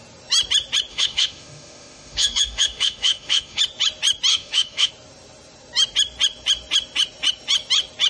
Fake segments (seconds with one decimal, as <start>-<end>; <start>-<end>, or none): 0.9-3.6; 4.3-4.9